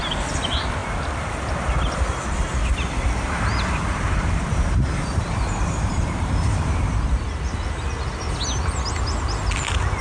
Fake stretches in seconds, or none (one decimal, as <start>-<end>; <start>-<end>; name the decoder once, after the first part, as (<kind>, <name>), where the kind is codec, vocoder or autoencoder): 3.9-7.4 (vocoder, BigVGAN v2)